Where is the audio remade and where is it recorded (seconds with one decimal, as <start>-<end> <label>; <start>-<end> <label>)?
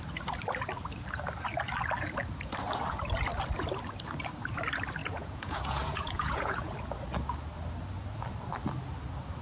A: 0.0-5.0 recorded; 5.0-6.7 remade; 6.7-9.4 recorded